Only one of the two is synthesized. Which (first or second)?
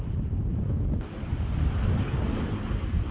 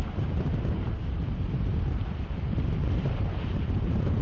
second